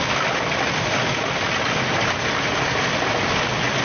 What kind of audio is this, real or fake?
real